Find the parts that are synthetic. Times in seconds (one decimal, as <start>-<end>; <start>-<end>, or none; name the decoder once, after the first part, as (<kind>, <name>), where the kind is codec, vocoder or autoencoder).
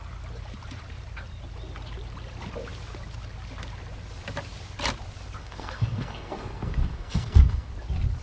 5.4-7.7 (codec, SNAC)